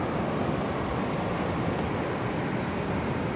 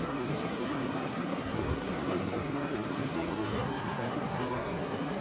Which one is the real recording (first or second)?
first